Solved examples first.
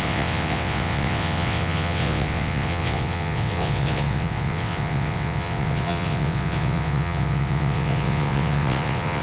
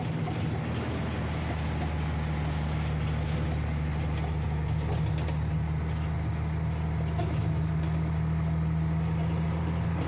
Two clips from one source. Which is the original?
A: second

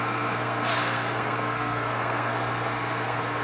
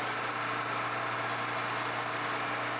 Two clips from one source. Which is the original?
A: second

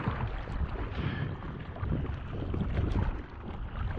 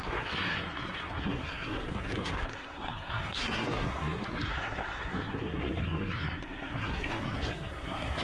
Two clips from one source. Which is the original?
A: first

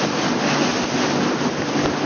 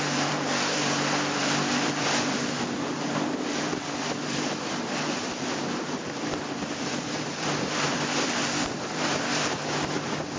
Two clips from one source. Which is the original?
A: first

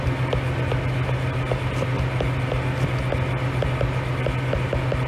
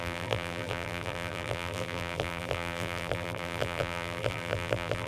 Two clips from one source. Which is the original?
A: first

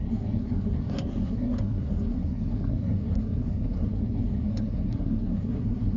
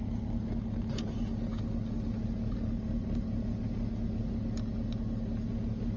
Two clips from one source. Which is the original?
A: second